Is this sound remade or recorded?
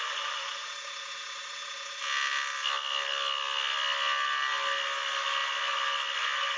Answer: recorded